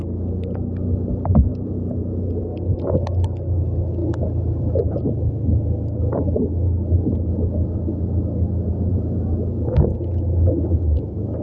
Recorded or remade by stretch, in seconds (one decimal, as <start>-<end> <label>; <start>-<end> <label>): 0.0-1.5 recorded; 1.5-2.4 remade; 2.4-8.9 recorded; 8.9-10.0 remade; 10.0-11.4 recorded